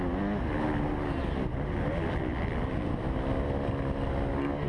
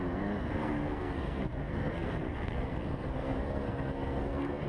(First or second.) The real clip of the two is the first